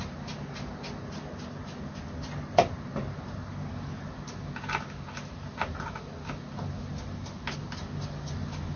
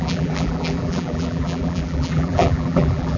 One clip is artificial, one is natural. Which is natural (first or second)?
first